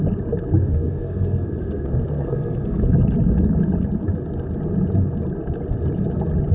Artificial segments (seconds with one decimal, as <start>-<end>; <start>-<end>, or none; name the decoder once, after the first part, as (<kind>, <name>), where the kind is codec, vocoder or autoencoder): 0.6-2.8 (codec, SNAC)